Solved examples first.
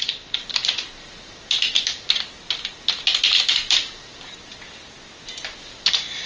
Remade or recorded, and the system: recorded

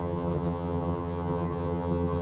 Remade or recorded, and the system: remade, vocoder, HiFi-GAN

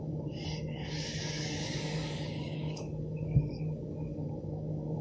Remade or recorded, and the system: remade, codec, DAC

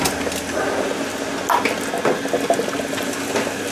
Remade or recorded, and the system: recorded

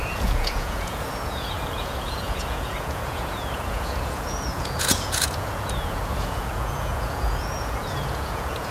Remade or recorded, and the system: remade, vocoder, Vocos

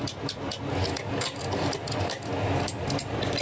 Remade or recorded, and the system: recorded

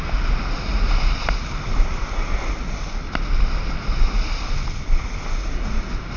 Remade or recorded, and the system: recorded